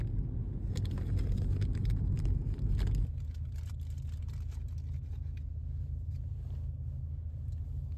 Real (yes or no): yes